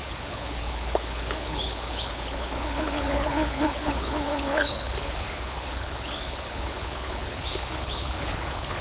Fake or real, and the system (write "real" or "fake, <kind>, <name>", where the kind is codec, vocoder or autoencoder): fake, codec, HILCodec